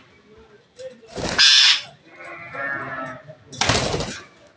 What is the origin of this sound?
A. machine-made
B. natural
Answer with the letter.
B